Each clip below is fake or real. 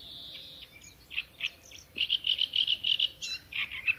fake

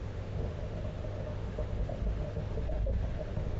fake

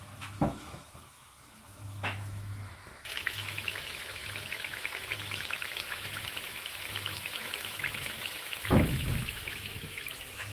fake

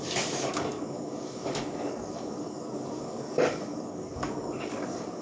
fake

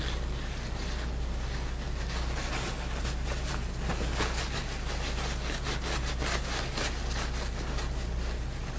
real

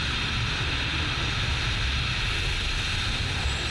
real